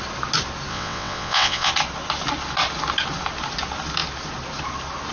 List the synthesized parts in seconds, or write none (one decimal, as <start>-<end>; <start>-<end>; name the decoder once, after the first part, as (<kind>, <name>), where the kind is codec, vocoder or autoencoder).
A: 0.7-1.7 (vocoder, WaveNeXt)